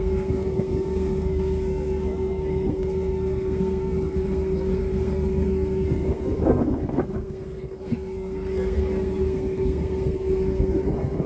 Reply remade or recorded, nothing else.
remade